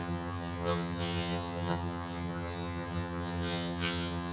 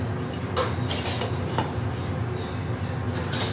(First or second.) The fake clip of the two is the first